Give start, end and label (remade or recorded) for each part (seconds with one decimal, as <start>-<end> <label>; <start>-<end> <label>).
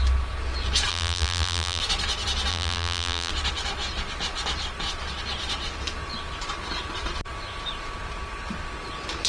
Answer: 0.0-0.9 recorded; 0.9-1.8 remade; 1.8-2.5 recorded; 2.5-3.3 remade; 3.3-9.3 recorded